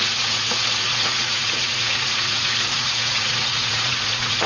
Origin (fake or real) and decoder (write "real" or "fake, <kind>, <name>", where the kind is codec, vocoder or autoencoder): fake, vocoder, Vocos